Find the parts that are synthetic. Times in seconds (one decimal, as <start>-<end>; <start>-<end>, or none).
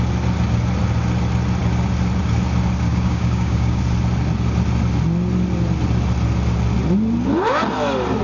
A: 2.9-3.8